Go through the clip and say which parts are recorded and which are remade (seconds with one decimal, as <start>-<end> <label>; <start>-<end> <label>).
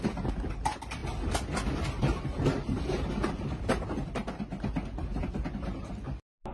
0.0-6.5 recorded